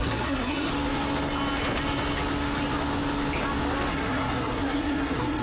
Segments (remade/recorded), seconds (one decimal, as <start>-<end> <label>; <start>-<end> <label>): 0.0-0.7 remade; 0.7-3.9 recorded; 3.9-5.4 remade